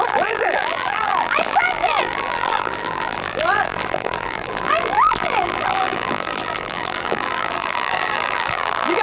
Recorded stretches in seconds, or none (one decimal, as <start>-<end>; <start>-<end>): none